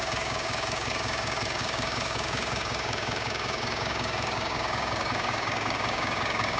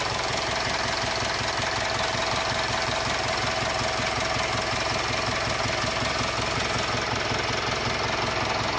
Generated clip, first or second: first